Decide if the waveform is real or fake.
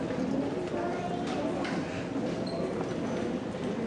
real